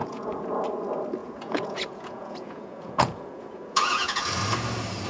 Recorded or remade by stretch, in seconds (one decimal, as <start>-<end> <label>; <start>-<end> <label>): 0.0-0.6 remade; 0.6-1.2 recorded; 1.2-4.3 remade; 4.3-5.1 recorded